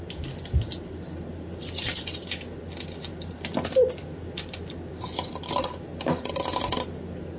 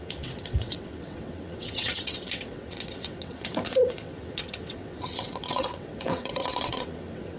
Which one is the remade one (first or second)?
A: second